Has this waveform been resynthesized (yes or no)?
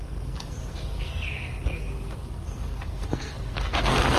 yes